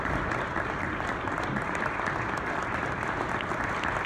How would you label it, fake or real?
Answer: real